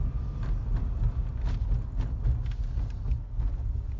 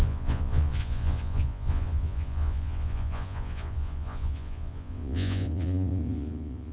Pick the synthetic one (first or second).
second